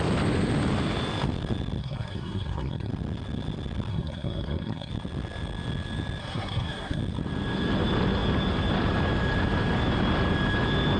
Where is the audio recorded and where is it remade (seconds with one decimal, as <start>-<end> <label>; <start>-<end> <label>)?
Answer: 0.0-1.8 recorded; 1.8-2.9 remade; 2.9-3.9 recorded; 3.9-4.9 remade; 4.9-6.2 recorded; 6.2-7.0 remade; 7.0-11.0 recorded